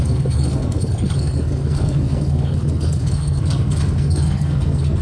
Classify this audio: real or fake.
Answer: fake